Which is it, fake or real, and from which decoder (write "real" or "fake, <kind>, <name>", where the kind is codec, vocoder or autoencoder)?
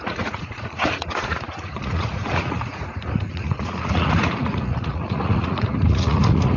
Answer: fake, vocoder, Vocos